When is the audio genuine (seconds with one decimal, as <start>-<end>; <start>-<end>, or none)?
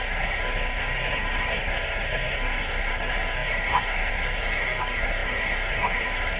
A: none